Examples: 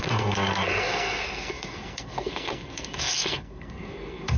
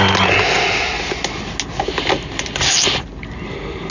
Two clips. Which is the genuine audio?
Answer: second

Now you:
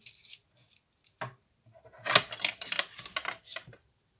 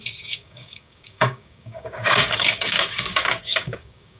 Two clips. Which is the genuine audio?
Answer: first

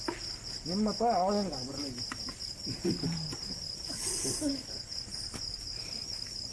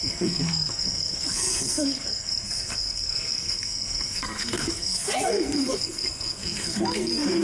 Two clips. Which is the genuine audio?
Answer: first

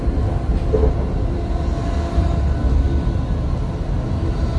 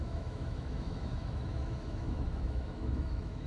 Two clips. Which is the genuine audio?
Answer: first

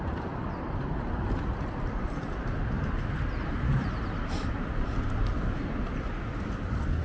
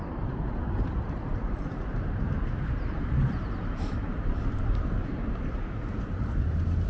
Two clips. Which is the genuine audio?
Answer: first